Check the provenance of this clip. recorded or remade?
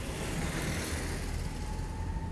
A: recorded